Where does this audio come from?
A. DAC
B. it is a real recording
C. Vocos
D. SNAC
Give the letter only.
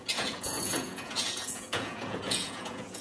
C